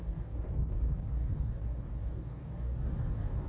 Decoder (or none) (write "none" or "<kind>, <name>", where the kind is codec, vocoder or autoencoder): codec, DAC